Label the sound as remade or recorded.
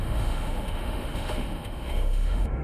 remade